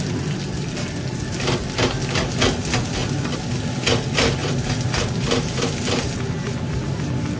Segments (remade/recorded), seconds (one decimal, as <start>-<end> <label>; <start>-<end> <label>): 0.0-7.4 recorded